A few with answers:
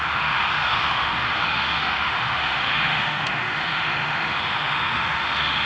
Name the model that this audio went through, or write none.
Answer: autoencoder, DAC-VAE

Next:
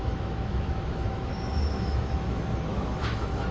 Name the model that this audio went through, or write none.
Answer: autoencoder, DAC-VAE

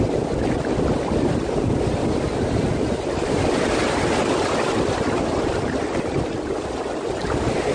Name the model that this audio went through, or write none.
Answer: none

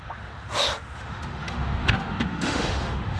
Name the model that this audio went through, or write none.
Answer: autoencoder, DAC-VAE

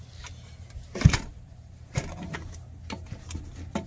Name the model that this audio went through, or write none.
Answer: none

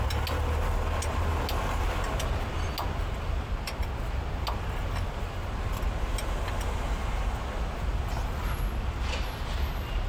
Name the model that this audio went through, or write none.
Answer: none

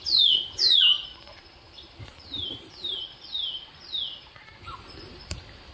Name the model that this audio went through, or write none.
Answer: none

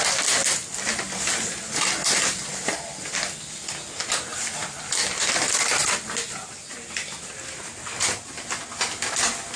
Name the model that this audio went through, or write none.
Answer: none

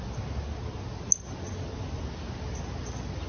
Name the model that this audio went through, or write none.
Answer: none